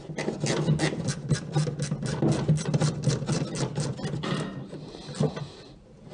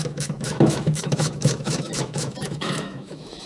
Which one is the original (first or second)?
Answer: first